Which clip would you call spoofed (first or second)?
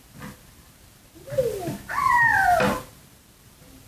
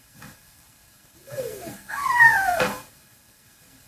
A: second